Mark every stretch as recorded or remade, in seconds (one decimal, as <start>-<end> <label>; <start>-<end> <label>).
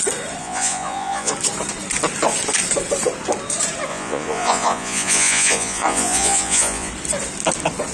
0.0-0.4 recorded; 0.4-1.3 remade; 1.3-3.9 recorded; 3.9-6.9 remade; 6.9-7.9 recorded